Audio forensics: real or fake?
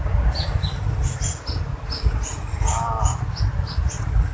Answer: real